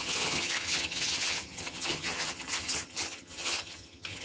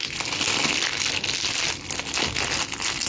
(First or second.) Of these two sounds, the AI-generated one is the first